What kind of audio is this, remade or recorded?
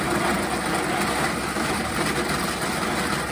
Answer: recorded